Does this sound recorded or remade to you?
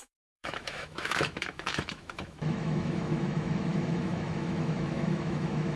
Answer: remade